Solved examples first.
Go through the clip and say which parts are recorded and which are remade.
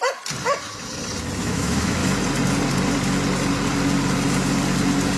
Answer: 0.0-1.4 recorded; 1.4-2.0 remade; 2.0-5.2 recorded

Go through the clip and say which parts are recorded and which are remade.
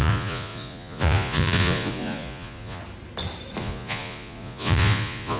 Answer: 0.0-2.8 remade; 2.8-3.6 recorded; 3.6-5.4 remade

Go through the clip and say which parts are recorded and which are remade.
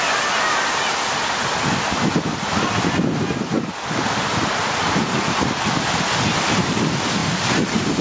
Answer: 0.0-7.2 recorded; 7.2-8.0 remade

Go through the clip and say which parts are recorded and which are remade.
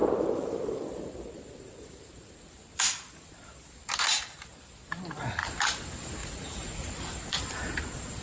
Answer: 0.0-6.2 recorded; 6.2-7.4 remade; 7.4-8.2 recorded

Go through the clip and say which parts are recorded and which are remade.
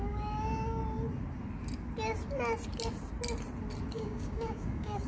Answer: 0.0-0.8 remade; 0.8-3.9 recorded; 3.9-5.1 remade